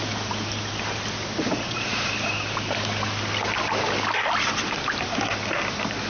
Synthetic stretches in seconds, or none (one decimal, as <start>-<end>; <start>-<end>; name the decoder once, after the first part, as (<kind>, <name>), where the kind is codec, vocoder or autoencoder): 1.4-2.1 (vocoder, Vocos)